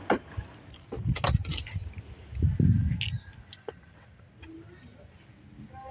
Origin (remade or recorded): recorded